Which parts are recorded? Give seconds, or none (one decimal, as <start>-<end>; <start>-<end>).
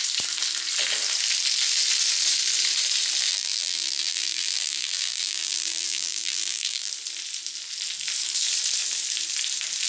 0.0-3.3; 6.9-9.9